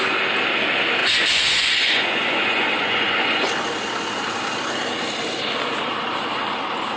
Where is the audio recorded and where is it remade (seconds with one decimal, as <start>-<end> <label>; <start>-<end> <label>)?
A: 0.0-1.0 recorded; 1.0-3.5 remade; 3.5-7.0 recorded